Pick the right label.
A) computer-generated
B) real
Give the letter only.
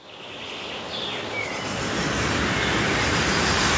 B